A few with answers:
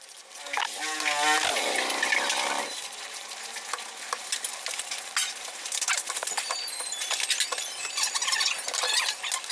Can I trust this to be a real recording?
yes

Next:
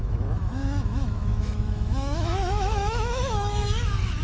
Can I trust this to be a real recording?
no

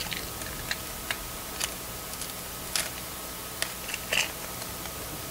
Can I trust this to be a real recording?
yes